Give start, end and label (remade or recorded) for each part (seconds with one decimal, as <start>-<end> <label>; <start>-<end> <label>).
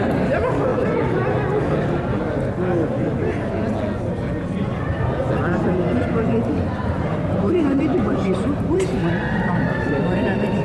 0.0-6.8 recorded; 6.8-9.0 remade; 9.0-10.6 recorded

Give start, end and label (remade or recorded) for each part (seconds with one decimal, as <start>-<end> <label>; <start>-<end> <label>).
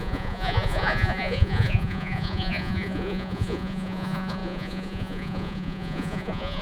0.0-6.6 remade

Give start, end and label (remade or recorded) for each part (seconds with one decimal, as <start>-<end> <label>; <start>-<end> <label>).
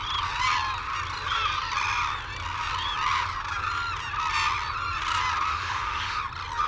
0.0-5.5 recorded; 5.5-6.2 remade; 6.2-6.7 recorded